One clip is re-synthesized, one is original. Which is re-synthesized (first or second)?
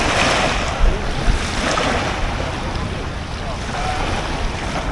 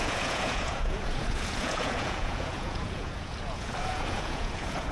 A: second